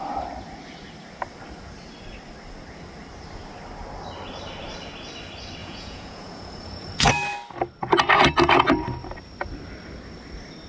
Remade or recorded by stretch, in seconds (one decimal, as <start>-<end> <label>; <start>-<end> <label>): 0.0-5.6 recorded; 5.6-7.1 remade; 7.1-10.7 recorded